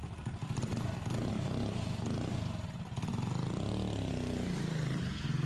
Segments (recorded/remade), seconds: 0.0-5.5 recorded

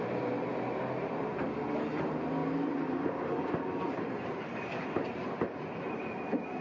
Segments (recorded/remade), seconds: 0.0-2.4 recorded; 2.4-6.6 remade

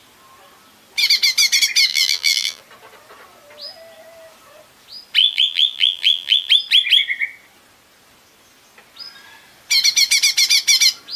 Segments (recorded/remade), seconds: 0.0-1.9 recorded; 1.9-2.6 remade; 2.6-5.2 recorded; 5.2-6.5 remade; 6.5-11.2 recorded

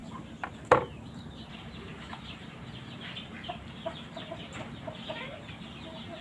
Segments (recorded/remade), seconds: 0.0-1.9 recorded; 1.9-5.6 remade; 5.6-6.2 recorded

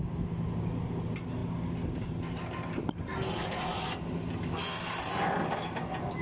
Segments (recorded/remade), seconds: 0.0-6.2 recorded

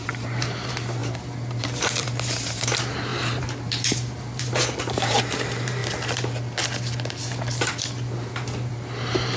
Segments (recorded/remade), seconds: 0.0-5.8 remade; 5.8-8.7 recorded; 8.7-9.4 remade

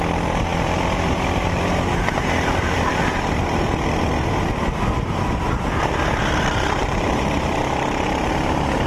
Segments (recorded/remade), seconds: 0.0-6.8 recorded; 6.8-8.3 remade; 8.3-8.9 recorded

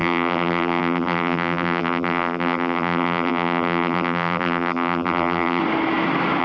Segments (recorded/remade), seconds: 0.0-5.6 remade; 5.6-6.4 recorded